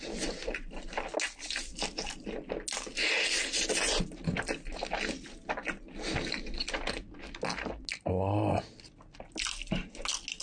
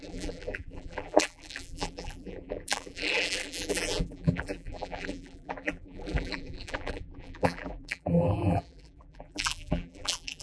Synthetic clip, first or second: second